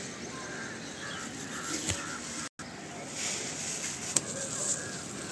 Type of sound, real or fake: real